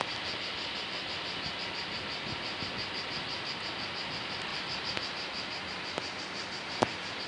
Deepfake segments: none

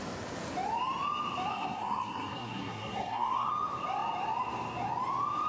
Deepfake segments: 1.5-3.5 (codec, SNAC)

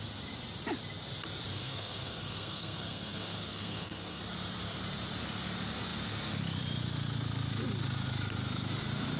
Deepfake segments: 1.5-4.2 (codec, SNAC)

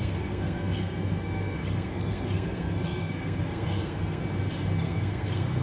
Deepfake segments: 0.0-4.2 (codec, SNAC); 4.8-5.6

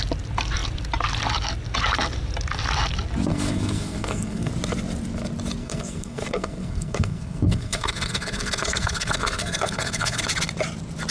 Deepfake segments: 3.3-4.5 (codec, SNAC); 5.6-10.2

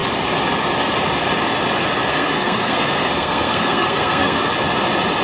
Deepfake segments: 2.1-4.5 (codec, SNAC)